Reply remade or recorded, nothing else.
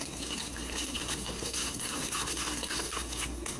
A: remade